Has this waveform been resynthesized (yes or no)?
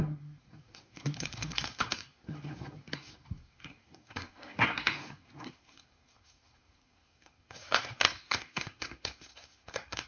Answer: yes